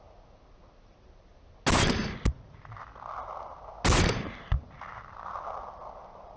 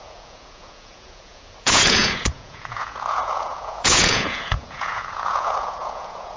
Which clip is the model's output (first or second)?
second